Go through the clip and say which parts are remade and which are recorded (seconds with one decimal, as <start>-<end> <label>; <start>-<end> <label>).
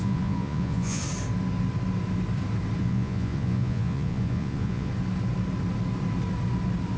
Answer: 0.0-1.0 remade; 1.0-2.8 recorded; 2.8-4.9 remade; 4.9-7.0 recorded